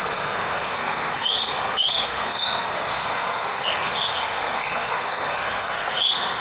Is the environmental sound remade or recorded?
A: remade